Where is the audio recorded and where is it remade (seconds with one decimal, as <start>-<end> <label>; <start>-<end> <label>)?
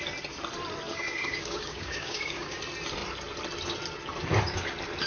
0.0-0.9 recorded; 0.9-2.6 remade; 2.6-5.1 recorded